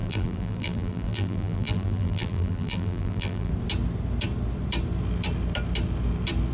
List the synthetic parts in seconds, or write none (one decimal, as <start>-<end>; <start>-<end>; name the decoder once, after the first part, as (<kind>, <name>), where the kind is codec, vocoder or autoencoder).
0.0-3.5 (vocoder, BigVGAN v2)